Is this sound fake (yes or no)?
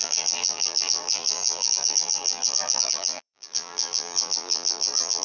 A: yes